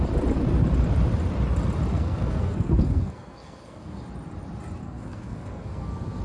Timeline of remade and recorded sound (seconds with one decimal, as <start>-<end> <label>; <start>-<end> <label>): 0.0-1.9 recorded; 1.9-4.0 remade; 4.0-4.8 recorded; 4.8-6.2 remade